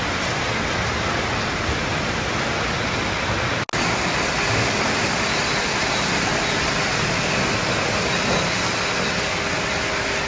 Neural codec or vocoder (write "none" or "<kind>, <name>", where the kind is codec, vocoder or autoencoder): none